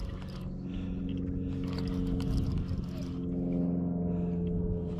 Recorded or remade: recorded